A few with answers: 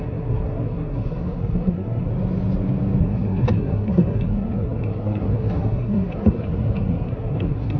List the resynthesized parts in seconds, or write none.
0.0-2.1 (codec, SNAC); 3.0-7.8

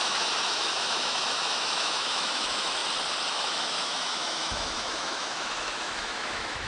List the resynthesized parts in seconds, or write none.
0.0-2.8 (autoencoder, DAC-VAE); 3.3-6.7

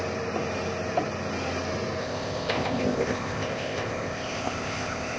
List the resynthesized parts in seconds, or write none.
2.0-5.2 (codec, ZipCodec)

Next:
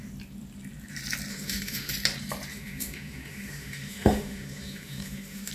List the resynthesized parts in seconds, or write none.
1.3-1.9 (autoencoder, DAC-VAE); 2.5-5.5

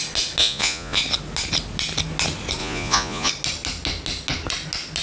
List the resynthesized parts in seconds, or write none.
0.4-1.0 (vocoder, Vocos); 2.6-3.3

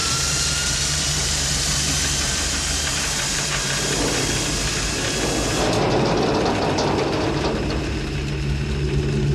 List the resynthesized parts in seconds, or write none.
0.0-4.3 (vocoder, BigVGAN v2)